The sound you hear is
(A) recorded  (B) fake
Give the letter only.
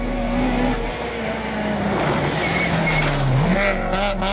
A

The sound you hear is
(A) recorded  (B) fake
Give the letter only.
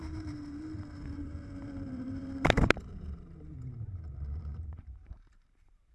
B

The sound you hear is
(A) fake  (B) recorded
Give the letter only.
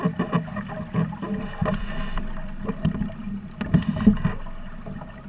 B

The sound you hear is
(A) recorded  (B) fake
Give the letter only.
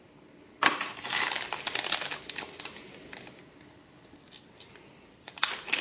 A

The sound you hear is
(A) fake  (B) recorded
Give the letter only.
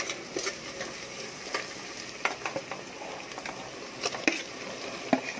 B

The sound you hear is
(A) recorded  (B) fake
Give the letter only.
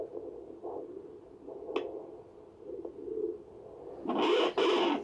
A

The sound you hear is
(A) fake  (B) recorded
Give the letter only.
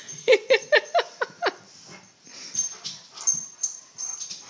B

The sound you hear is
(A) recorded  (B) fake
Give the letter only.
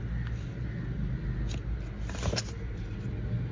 A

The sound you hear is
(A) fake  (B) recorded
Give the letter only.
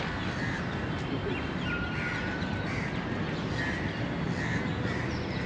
B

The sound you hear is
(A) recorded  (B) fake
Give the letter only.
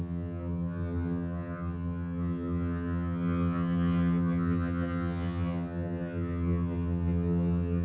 B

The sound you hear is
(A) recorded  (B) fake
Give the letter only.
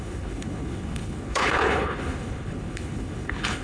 B